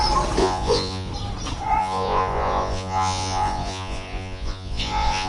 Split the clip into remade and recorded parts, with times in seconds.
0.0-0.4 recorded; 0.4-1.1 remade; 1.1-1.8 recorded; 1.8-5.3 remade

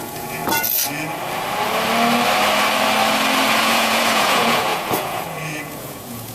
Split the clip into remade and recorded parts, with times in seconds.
0.0-0.4 remade; 0.4-3.6 recorded; 3.6-6.3 remade

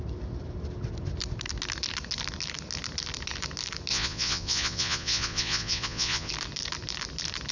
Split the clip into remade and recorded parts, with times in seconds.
0.0-3.9 recorded; 3.9-6.3 remade; 6.3-7.5 recorded

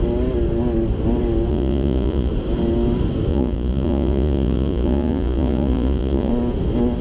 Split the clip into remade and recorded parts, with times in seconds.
0.0-1.5 recorded; 1.5-2.3 remade; 2.3-3.3 recorded; 3.3-6.3 remade; 6.3-7.0 recorded

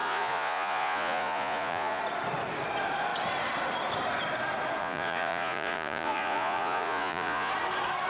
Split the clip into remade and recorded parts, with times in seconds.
0.0-2.0 remade; 2.0-4.8 recorded; 4.8-7.5 remade; 7.5-8.1 recorded